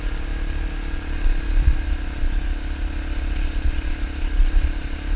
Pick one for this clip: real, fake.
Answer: real